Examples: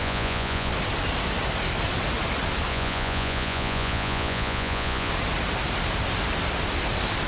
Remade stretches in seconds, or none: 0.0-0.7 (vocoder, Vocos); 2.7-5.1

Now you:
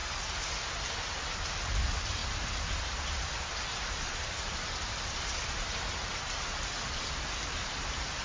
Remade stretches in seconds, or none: 1.6-8.2 (vocoder, BigVGAN v2)

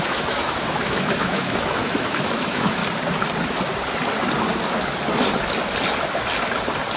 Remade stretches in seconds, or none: 0.0-2.8 (autoencoder, DAC-VAE)

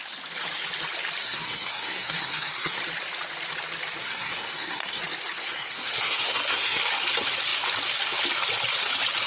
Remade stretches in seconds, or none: 1.2-2.8 (codec, SNAC); 4.0-5.0; 5.4-6.8

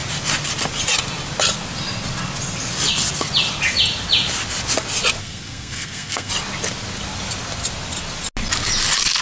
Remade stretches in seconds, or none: 5.2-6.3 (codec, SNAC)

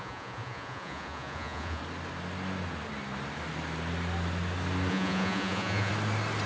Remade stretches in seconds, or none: 0.0-1.8 (vocoder, Vocos); 4.9-5.9